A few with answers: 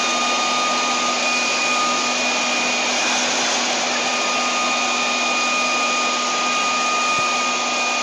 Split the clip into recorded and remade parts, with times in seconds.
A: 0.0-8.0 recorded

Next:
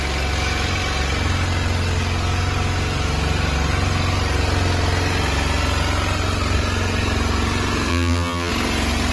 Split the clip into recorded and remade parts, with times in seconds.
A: 0.0-7.9 recorded; 7.9-8.5 remade; 8.5-9.1 recorded

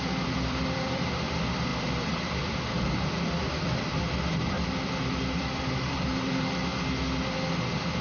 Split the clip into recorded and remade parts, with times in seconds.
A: 0.0-6.7 remade; 6.7-7.6 recorded; 7.6-8.0 remade

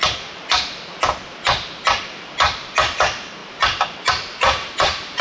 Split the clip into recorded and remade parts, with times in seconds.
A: 0.0-0.4 remade; 0.4-2.6 recorded; 2.6-3.4 remade; 3.4-4.1 recorded; 4.1-5.2 remade